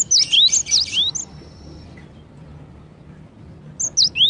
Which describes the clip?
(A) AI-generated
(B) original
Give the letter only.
B